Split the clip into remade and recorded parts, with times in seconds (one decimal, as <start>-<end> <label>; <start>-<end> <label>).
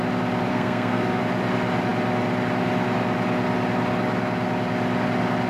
0.0-0.5 recorded; 0.5-1.2 remade; 1.2-5.5 recorded